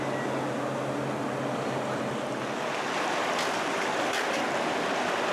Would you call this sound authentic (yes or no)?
yes